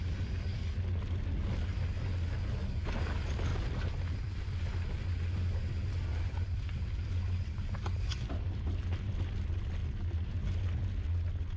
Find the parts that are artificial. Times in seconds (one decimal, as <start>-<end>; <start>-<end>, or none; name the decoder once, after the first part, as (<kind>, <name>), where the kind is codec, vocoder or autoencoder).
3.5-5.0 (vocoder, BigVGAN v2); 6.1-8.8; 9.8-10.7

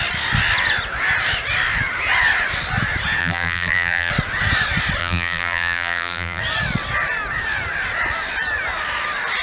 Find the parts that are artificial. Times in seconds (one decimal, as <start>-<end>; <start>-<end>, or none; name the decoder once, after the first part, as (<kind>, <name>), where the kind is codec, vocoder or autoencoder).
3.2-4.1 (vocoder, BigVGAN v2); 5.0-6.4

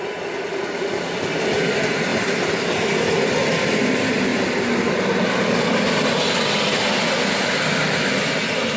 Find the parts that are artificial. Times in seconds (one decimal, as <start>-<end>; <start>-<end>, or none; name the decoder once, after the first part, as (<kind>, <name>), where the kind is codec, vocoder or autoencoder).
none

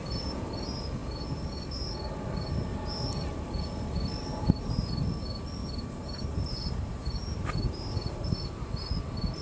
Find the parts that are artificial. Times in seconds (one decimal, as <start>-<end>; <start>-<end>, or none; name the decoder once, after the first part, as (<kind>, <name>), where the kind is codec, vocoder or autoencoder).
4.3-4.9 (vocoder, BigVGAN v2); 5.6-8.3

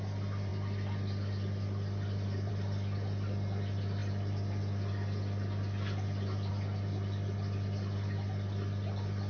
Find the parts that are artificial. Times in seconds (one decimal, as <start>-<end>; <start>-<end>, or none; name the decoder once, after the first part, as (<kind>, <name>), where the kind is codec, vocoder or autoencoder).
none

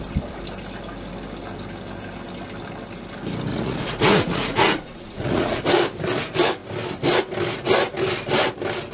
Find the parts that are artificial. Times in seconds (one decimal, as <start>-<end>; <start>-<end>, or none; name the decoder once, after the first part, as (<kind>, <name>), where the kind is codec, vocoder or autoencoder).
3.5-5.6 (vocoder, Vocos)